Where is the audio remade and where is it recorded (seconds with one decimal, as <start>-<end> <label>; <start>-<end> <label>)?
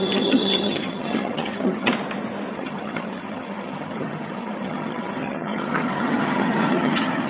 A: 0.0-1.9 remade; 1.9-2.5 recorded; 2.5-7.3 remade